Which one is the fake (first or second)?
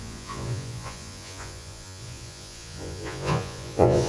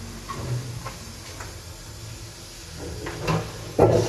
first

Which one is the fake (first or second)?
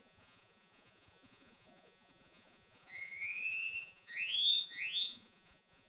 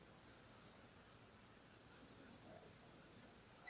first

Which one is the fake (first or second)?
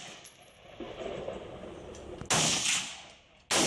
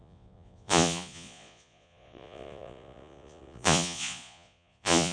second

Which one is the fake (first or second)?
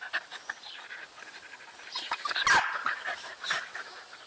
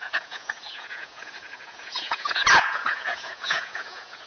second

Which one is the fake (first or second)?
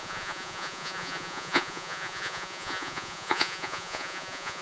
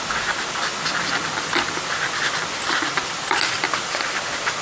first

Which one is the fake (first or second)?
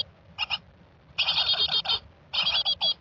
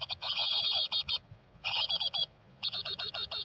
second